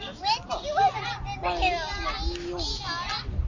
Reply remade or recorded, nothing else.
recorded